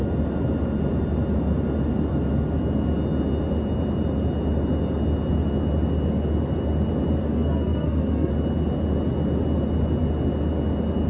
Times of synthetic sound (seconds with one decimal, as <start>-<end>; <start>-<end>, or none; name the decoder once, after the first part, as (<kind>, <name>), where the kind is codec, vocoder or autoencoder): 7.2-8.3 (codec, SNAC)